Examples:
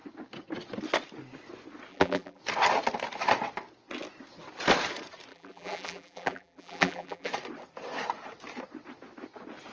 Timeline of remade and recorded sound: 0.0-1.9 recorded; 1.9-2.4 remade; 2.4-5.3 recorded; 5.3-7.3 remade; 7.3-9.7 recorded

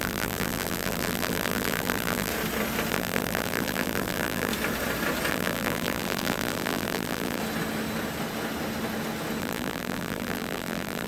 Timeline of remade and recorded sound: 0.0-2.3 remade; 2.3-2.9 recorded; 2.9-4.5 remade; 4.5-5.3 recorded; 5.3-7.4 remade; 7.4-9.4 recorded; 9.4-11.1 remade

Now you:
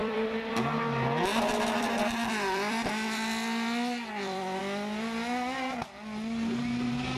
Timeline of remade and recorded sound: 0.0-0.5 remade; 0.5-1.3 recorded; 1.3-4.6 remade; 4.6-7.2 recorded

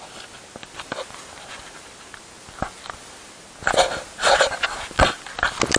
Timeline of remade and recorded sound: 0.0-5.8 recorded